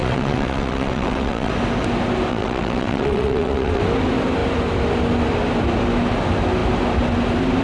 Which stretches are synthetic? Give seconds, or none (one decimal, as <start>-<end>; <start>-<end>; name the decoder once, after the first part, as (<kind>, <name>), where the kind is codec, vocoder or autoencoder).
0.0-1.5 (vocoder, WaveNeXt); 2.3-3.8